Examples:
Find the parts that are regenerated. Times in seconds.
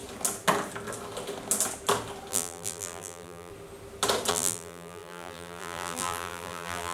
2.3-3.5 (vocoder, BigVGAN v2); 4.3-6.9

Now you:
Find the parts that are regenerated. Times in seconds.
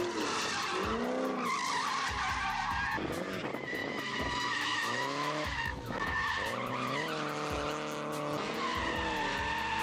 3.8-6.3 (autoencoder, DAC-VAE)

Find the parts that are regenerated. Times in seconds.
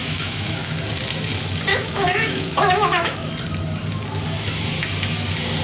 0.0-0.8 (autoencoder, DAC-VAE); 1.7-3.3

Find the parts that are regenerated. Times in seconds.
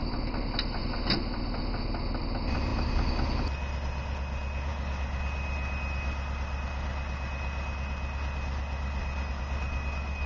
none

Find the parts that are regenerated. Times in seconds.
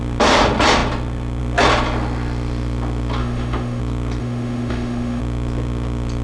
3.2-3.8 (autoencoder, DAC-VAE); 4.2-5.2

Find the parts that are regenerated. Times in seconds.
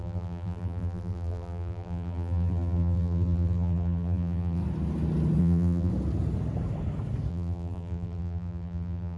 0.0-4.6 (vocoder, BigVGAN v2); 5.4-5.9; 7.3-9.2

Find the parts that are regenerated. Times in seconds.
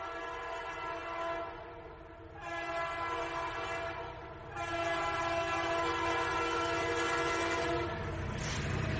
none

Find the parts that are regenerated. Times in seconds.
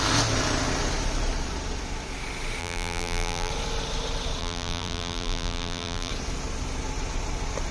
2.6-3.5 (vocoder, BigVGAN v2); 4.4-6.1